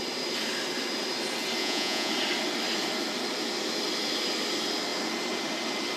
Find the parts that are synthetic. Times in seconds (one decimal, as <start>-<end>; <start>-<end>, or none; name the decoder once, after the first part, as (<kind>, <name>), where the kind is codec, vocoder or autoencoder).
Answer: 1.6-2.1 (vocoder, Vocos)